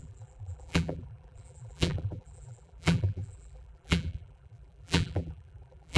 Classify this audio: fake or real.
fake